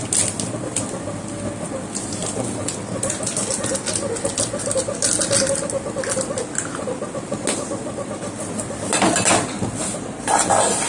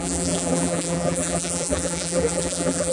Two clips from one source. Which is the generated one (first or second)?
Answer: second